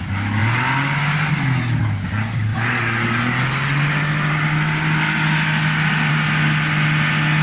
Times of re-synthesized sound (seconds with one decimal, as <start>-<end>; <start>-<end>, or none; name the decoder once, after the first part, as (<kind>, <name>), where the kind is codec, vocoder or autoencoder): none